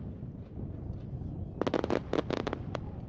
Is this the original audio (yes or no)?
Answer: yes